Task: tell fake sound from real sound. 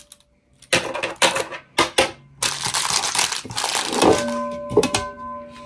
real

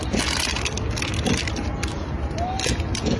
real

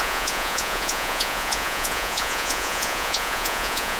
fake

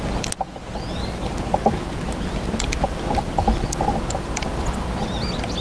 real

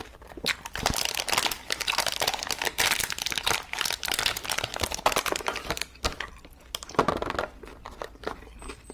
real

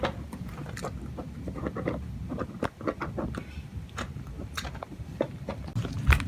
real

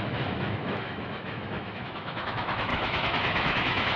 fake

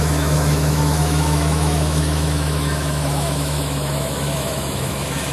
fake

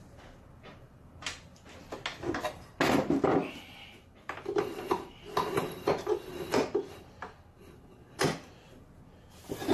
real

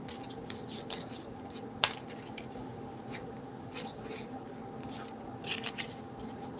real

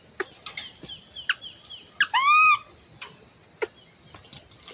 real